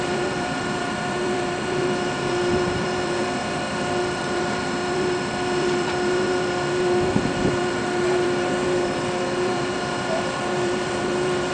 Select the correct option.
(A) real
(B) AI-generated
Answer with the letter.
B